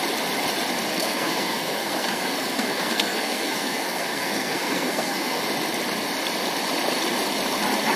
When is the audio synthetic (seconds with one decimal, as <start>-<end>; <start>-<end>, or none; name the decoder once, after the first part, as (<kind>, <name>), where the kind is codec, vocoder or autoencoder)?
0.9-5.4 (codec, SNAC)

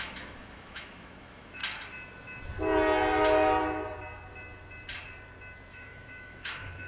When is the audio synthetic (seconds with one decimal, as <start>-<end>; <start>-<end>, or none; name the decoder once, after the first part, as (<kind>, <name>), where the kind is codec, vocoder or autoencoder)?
0.0-1.6 (autoencoder, DAC-VAE); 5.7-6.9

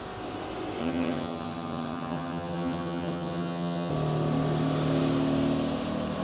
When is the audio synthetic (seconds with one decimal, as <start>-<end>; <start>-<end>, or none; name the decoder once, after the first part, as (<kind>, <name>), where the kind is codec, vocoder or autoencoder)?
0.8-3.9 (vocoder, HiFi-GAN)

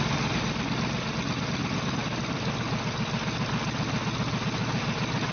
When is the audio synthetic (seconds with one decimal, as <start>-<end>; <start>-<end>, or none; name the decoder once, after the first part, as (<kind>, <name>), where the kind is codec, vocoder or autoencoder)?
none

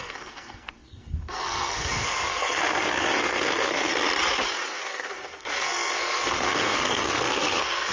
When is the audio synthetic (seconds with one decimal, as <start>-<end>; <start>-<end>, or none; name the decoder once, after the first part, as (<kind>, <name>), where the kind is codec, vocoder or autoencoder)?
0.0-3.9 (codec, SNAC); 4.7-7.9